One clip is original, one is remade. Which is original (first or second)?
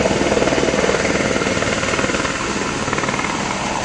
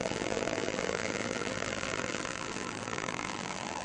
first